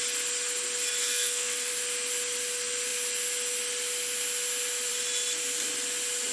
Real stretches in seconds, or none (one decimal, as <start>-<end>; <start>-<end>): 0.0-1.0; 1.7-6.3